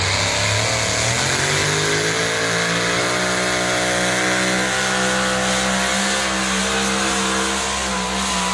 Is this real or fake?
real